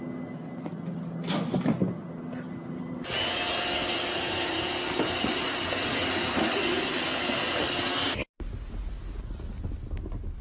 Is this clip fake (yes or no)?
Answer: no